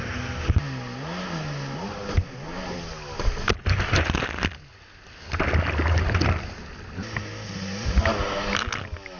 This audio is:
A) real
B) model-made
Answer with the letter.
A